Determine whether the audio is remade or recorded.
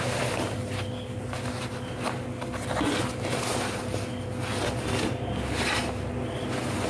recorded